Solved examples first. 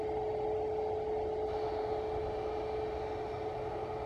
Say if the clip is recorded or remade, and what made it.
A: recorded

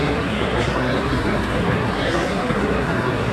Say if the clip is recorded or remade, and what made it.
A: remade, codec, SNAC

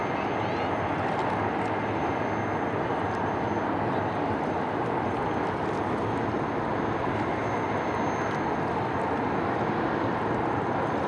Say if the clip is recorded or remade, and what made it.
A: recorded